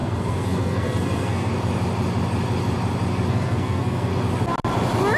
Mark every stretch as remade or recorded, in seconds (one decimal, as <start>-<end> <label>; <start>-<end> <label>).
0.0-1.5 remade; 1.5-3.3 recorded; 3.3-4.1 remade; 4.1-5.2 recorded